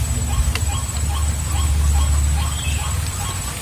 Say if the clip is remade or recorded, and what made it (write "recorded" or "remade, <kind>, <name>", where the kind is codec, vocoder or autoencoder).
recorded